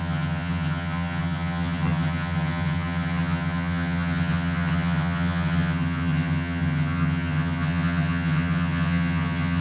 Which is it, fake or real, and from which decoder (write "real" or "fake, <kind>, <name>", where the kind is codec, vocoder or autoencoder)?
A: fake, vocoder, HiFi-GAN